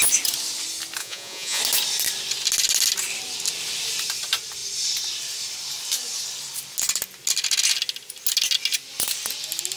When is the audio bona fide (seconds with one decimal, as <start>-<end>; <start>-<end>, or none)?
0.0-1.0; 1.6-9.8